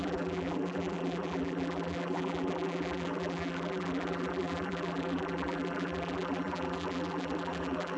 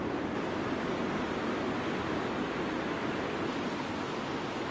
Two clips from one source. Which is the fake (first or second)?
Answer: first